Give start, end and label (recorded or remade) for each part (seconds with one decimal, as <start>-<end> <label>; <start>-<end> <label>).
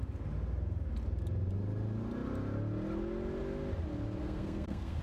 0.0-4.2 recorded; 4.2-5.0 remade